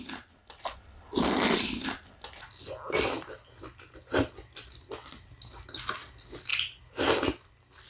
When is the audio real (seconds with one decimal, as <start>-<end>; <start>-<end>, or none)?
0.0-7.9